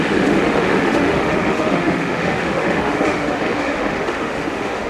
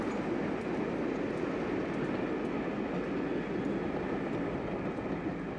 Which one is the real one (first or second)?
second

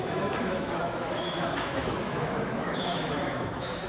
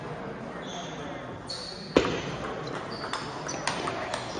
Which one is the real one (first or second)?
second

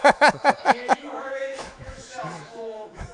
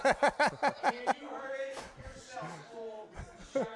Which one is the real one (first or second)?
second